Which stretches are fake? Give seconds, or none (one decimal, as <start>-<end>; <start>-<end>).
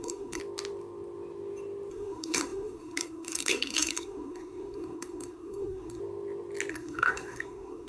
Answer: 0.0-0.4; 1.9-6.0; 6.7-7.9